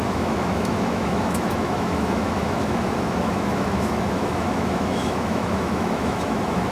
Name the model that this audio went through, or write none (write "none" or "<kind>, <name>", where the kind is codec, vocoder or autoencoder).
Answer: autoencoder, DAC-VAE